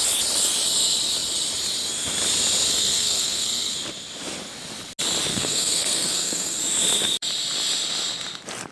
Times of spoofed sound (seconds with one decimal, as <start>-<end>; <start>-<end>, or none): 2.7-3.7; 5.3-6.6